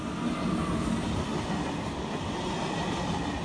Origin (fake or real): real